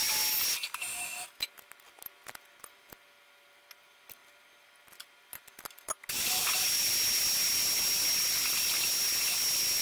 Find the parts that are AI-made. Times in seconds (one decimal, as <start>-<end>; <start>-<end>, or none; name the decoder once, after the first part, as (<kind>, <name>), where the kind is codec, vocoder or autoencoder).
0.9-1.4 (autoencoder, DAC-VAE)